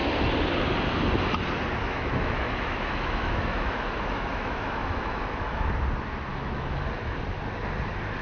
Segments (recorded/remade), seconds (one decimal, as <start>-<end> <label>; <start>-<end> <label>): 0.0-1.8 recorded; 1.8-5.7 remade; 5.7-6.3 recorded; 6.3-6.8 remade; 6.8-8.2 recorded